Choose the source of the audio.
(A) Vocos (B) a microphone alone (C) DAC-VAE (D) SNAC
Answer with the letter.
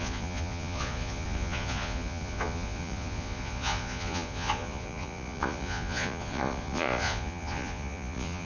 A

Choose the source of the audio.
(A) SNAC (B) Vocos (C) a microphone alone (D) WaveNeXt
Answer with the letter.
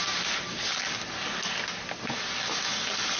C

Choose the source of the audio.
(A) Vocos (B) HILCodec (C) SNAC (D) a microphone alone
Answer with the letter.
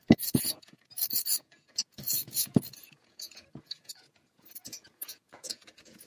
A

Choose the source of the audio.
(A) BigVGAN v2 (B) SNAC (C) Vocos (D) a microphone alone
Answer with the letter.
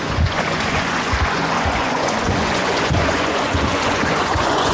C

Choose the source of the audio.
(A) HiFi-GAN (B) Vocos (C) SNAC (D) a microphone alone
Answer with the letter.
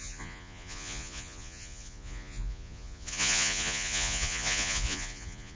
B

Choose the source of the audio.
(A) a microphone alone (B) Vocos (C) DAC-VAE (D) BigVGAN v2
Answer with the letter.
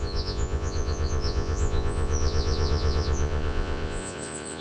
B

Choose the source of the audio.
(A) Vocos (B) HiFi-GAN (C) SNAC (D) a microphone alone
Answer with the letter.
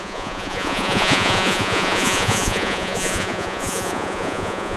A